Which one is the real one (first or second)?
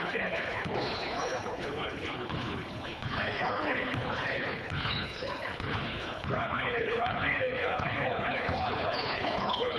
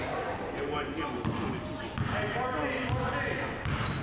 second